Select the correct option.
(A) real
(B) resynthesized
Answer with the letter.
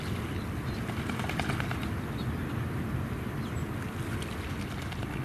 A